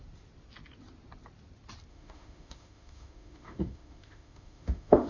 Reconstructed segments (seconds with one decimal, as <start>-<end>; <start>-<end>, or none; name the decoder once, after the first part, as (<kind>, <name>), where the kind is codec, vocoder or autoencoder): 1.9-5.1 (autoencoder, DAC-VAE)